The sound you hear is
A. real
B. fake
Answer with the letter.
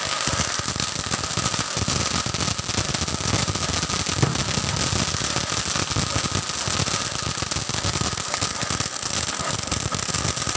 A